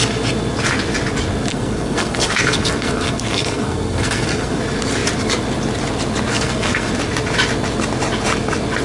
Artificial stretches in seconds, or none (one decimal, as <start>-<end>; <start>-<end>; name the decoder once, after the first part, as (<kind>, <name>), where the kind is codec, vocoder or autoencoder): 1.5-4.6 (codec, SNAC); 6.3-6.9